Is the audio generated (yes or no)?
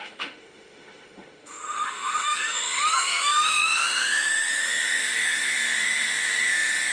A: yes